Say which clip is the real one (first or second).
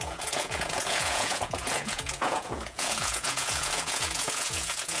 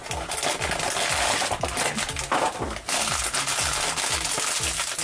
second